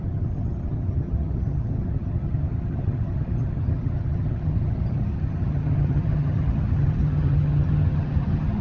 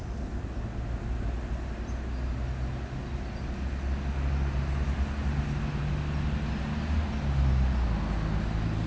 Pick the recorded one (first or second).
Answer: second